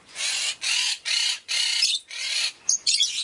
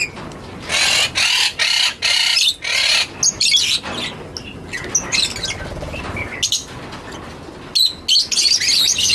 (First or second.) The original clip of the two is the second